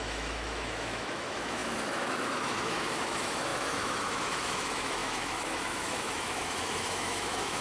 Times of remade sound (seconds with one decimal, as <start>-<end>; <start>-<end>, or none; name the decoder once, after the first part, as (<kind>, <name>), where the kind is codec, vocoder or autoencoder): 0.0-7.6 (autoencoder, DAC-VAE)